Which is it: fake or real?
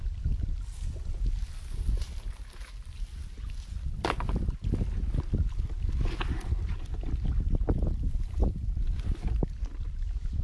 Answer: real